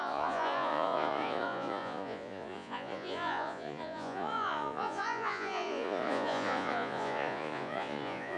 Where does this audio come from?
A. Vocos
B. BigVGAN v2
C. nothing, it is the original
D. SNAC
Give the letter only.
A